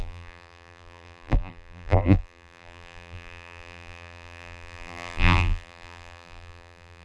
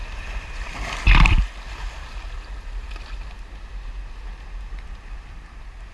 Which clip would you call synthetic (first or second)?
first